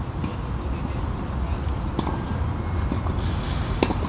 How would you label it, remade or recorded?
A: recorded